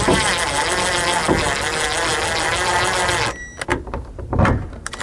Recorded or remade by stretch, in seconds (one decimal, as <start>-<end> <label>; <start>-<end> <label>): 0.0-5.0 recorded